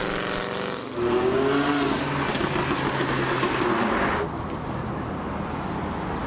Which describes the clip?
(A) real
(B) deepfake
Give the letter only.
A